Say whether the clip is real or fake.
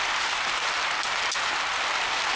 real